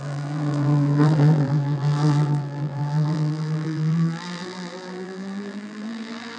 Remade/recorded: remade